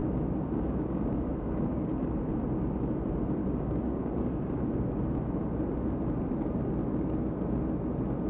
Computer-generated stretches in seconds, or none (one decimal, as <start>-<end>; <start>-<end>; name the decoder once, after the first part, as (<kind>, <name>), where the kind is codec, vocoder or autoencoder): 0.0-1.9 (codec, DAC); 3.4-4.9